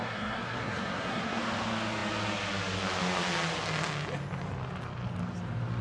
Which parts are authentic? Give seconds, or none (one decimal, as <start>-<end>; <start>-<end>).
1.4-5.8